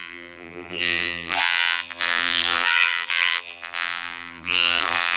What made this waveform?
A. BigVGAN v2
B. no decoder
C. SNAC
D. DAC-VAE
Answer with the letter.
A